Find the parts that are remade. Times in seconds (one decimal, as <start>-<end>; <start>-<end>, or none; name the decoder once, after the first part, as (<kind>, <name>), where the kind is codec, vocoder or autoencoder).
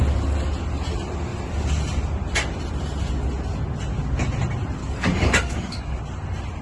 4.8-6.0 (codec, DAC)